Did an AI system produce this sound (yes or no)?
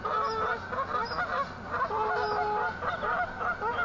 no